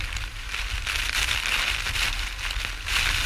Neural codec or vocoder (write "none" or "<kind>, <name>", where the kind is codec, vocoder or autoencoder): none